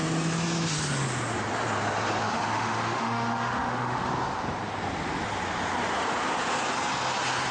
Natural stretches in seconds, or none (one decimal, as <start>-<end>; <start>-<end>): 0.0-2.2; 4.1-7.5